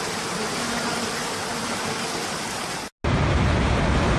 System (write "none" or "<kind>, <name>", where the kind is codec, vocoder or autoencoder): none